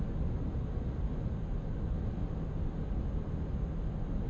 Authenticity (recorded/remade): recorded